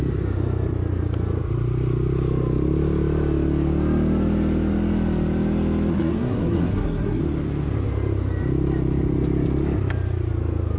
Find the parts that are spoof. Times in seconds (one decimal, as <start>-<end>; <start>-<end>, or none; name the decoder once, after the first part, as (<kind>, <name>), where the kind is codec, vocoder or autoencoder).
5.9-7.2 (codec, SNAC)